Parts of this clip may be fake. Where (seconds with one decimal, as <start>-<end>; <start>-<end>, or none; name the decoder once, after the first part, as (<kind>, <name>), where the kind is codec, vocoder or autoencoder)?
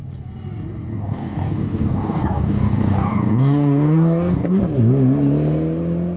0.9-4.6 (codec, DAC)